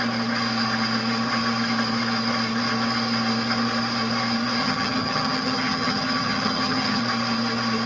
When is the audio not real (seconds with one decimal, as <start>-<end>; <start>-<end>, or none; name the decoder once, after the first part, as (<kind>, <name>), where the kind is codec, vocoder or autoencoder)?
4.6-7.0 (vocoder, HiFi-GAN)